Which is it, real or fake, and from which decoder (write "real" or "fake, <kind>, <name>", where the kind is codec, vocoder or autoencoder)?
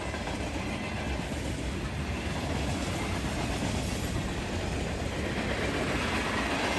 real